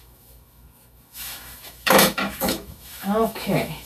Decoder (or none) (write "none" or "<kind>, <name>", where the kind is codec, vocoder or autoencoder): autoencoder, DAC-VAE